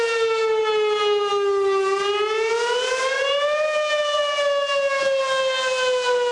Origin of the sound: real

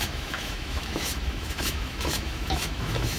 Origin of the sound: fake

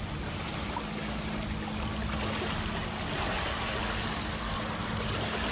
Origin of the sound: real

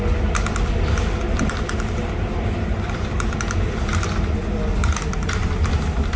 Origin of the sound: real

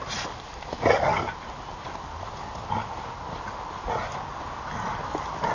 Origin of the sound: real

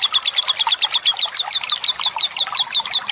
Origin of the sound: real